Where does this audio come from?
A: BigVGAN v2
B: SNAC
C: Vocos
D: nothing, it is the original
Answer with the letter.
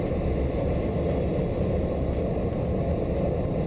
D